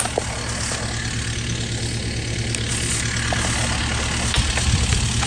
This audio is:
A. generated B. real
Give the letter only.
B